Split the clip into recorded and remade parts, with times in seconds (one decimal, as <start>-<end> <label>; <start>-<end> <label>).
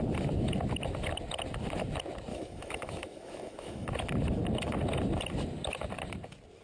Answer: 0.0-2.3 recorded; 2.3-3.9 remade; 3.9-6.6 recorded